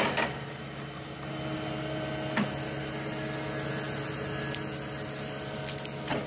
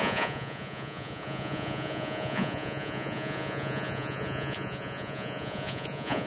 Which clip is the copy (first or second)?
second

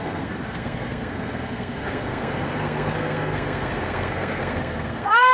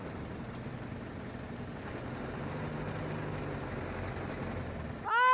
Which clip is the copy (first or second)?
first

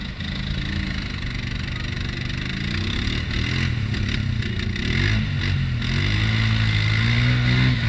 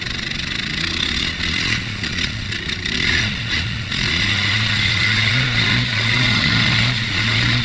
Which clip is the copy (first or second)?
second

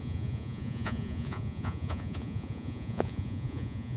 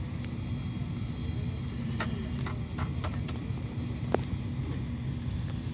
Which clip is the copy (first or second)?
first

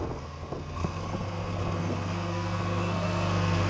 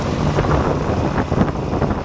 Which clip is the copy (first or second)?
first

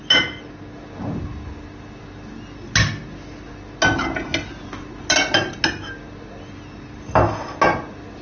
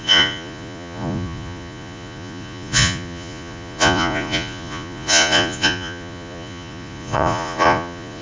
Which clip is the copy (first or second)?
second